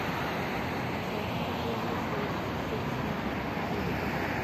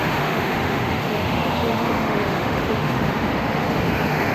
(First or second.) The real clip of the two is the first